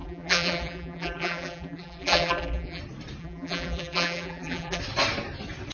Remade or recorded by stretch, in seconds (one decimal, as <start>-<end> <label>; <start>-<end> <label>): 0.0-2.8 remade; 2.8-3.2 recorded; 3.2-4.8 remade; 4.8-5.7 recorded